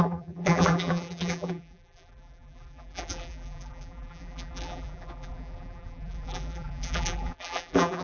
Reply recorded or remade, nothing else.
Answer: remade